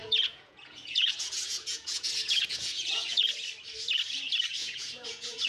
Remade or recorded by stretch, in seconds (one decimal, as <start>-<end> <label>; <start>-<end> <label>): 0.0-3.3 remade; 3.3-4.6 recorded; 4.6-5.5 remade